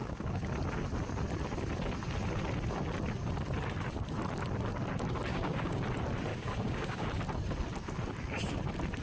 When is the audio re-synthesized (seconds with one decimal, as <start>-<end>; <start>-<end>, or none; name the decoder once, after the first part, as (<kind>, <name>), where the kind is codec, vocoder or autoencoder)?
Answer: 0.0-0.5 (codec, DAC); 5.3-5.8; 6.3-7.1